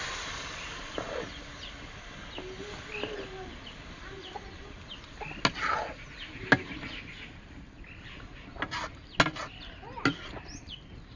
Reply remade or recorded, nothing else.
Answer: recorded